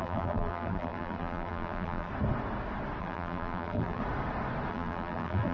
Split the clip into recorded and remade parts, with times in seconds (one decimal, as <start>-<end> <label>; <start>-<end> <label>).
0.0-2.1 remade; 2.1-3.0 recorded; 3.0-4.0 remade; 4.0-4.7 recorded; 4.7-5.5 remade